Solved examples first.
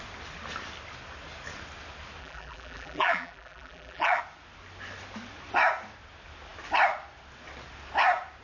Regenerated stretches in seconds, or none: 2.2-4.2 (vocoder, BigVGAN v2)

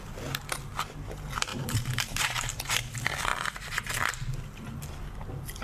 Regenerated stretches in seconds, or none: 1.5-2.6 (vocoder, BigVGAN v2); 3.3-3.9

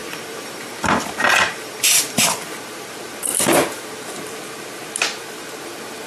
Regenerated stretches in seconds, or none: 0.0-6.1 (vocoder, BigVGAN v2)

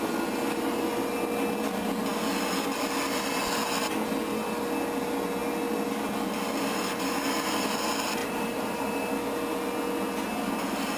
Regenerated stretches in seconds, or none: 8.2-9.1 (vocoder, BigVGAN v2)

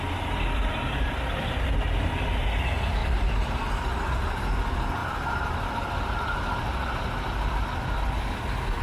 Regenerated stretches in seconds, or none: 3.0-3.7 (vocoder, BigVGAN v2); 5.0-7.6

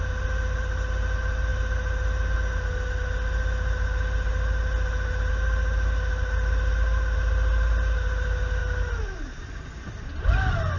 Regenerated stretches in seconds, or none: none

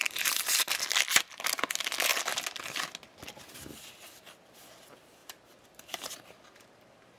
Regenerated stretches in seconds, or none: 0.0-0.7 (vocoder, BigVGAN v2); 5.2-6.1